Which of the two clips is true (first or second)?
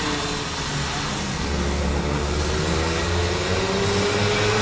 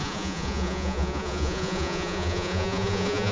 first